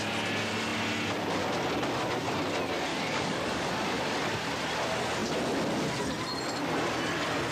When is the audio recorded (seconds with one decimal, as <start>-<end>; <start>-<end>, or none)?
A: 0.0-2.9; 3.7-7.5